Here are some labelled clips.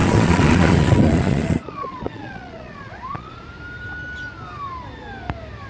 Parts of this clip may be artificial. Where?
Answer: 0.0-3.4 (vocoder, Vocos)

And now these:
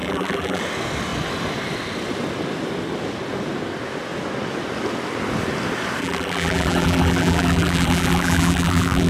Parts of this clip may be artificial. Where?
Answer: 0.0-0.6 (vocoder, BigVGAN v2); 6.0-9.1

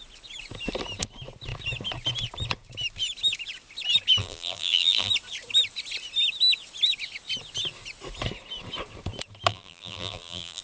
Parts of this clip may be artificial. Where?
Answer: 4.2-5.1 (vocoder, BigVGAN v2); 9.5-10.6

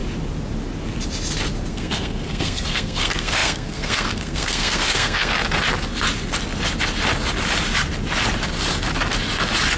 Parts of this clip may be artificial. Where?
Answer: 1.7-5.3 (codec, SNAC)

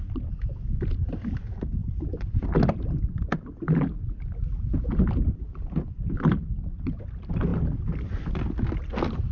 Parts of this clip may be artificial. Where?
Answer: none

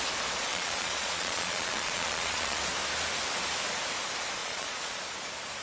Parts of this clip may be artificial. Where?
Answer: 0.5-2.6 (vocoder, Vocos); 4.4-5.0